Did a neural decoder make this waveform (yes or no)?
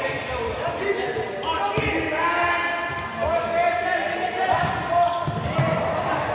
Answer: no